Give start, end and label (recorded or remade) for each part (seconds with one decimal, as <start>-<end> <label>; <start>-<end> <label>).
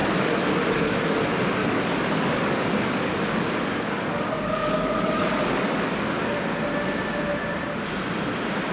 0.0-1.2 remade; 1.2-1.6 recorded; 1.6-6.4 remade; 6.4-8.7 recorded